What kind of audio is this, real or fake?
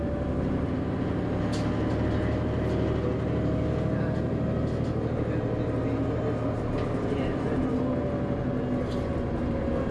real